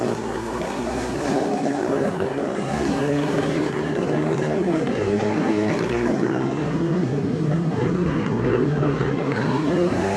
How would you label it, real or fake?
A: fake